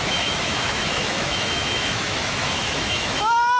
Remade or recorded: remade